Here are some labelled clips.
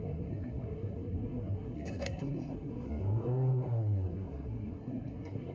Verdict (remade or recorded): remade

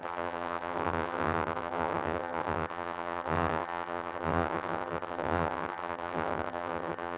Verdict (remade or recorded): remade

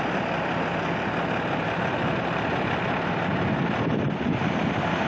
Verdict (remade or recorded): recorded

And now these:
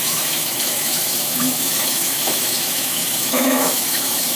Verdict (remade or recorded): remade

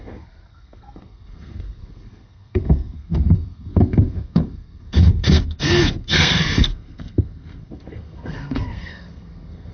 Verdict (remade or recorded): remade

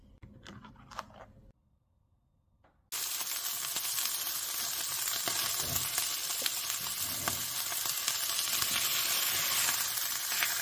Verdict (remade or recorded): recorded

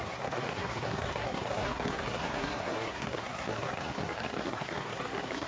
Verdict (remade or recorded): remade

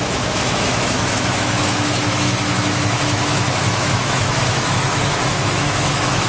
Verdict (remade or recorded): remade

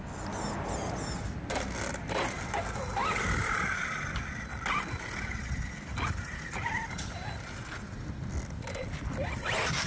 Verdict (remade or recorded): recorded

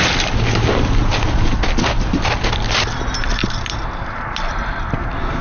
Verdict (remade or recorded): recorded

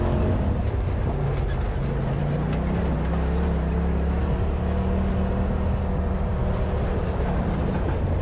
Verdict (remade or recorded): recorded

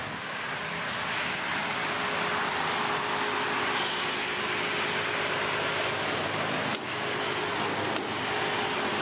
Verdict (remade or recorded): recorded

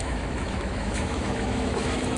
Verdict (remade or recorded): remade